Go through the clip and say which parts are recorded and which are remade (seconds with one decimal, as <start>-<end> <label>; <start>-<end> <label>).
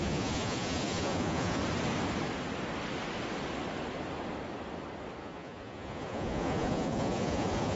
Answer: 0.0-1.6 remade; 1.6-5.2 recorded; 5.2-7.8 remade